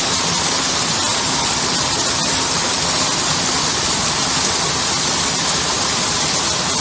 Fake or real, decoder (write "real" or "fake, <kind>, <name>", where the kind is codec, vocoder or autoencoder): real